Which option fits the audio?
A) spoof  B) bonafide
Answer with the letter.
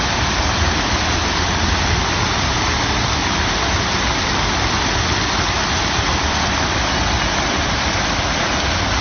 B